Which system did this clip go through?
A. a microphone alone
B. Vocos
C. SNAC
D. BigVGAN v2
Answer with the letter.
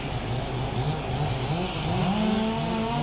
A